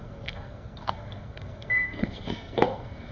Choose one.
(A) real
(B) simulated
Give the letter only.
B